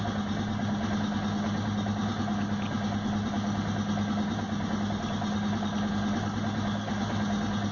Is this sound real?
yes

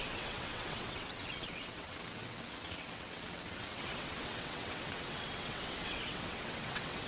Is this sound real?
no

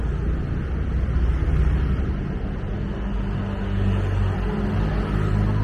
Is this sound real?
yes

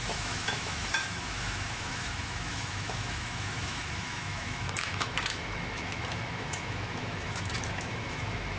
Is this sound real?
no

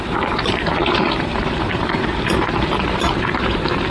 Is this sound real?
no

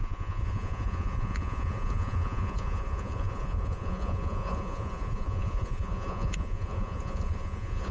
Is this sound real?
no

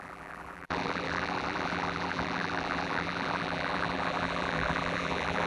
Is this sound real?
no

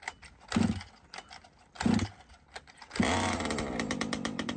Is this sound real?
yes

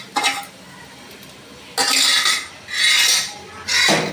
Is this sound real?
yes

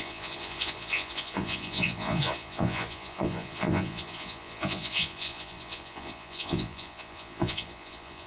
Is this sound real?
no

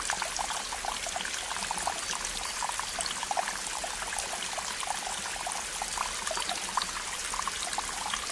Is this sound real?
yes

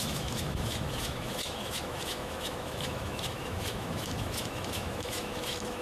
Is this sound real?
no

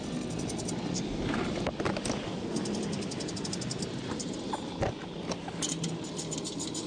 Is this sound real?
yes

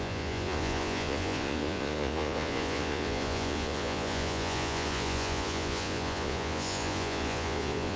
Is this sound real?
no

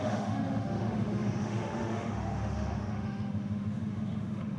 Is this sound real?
no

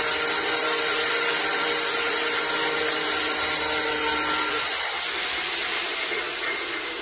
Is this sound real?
yes